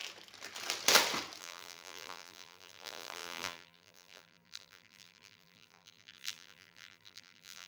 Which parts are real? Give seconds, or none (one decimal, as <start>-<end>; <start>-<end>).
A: 0.0-1.4